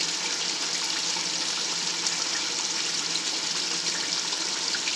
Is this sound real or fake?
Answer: real